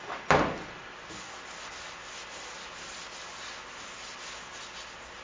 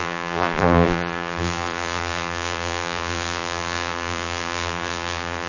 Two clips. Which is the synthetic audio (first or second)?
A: second